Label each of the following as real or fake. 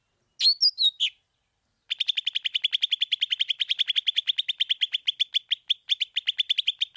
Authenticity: real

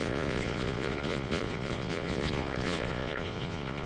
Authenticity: fake